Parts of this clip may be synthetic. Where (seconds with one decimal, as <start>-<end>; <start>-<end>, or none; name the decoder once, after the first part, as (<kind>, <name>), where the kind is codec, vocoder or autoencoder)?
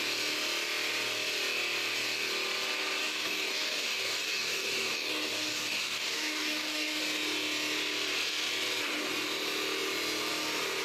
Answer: 3.0-7.0 (codec, DAC)